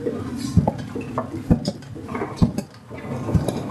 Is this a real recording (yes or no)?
yes